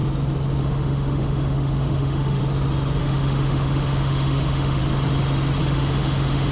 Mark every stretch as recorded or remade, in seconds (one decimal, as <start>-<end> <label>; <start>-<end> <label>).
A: 0.0-0.6 recorded; 0.6-2.4 remade; 2.4-3.0 recorded; 3.0-4.8 remade; 4.8-5.6 recorded; 5.6-6.5 remade